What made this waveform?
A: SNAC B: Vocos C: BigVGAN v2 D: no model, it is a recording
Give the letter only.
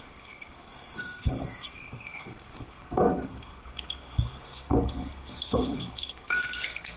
A